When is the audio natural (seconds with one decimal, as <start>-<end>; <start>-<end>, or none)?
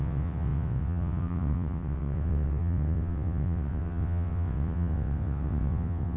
none